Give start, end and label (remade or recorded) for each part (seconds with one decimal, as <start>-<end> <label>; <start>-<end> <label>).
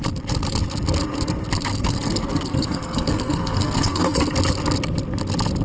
0.0-1.7 recorded; 1.7-4.2 remade; 4.2-5.6 recorded